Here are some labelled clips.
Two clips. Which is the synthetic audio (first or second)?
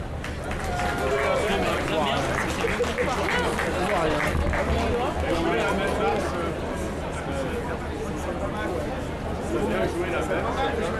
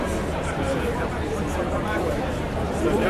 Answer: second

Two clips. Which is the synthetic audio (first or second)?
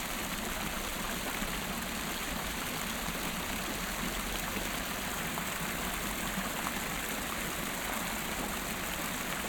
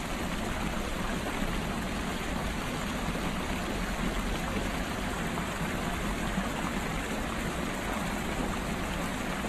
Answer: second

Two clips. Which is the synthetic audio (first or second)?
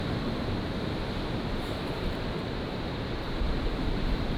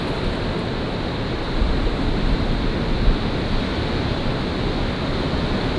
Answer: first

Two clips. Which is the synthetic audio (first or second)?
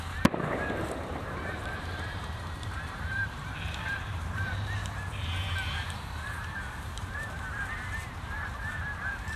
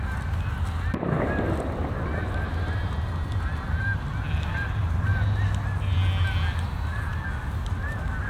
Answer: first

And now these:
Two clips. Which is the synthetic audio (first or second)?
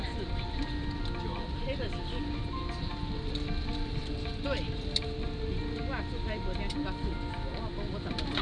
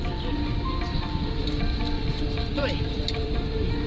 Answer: second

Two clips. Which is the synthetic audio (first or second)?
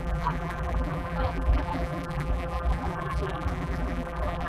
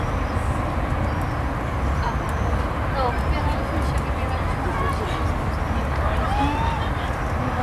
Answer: first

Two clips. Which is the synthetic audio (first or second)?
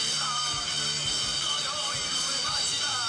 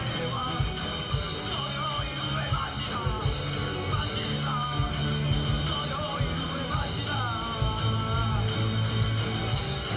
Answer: first